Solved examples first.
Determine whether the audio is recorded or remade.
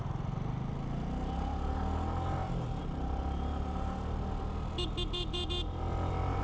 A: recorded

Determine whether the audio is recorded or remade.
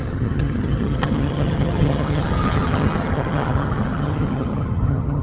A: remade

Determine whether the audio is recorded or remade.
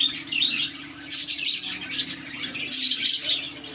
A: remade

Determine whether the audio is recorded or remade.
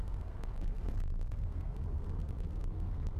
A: remade